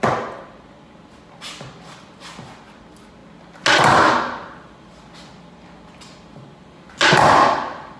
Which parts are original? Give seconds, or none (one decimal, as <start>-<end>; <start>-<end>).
0.0-8.0